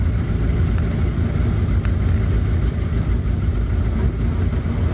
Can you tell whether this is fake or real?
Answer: real